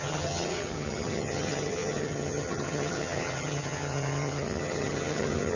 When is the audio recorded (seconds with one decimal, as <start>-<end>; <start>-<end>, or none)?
none

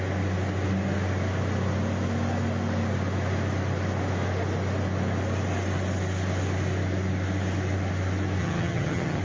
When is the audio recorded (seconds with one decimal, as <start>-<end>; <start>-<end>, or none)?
0.0-8.4

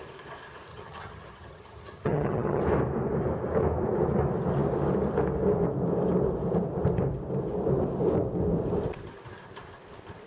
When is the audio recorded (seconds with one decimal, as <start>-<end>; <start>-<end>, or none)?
0.0-0.7; 2.6-10.3

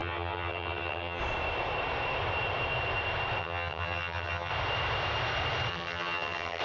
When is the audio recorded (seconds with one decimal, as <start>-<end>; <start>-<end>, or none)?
1.2-3.4; 4.5-5.7

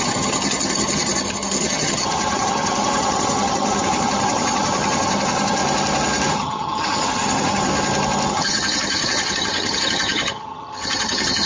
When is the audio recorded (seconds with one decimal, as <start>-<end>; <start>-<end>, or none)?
5.6-6.3; 7.7-8.3

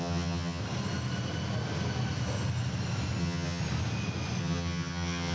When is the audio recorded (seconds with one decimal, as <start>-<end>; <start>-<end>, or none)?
0.6-3.2; 3.6-4.4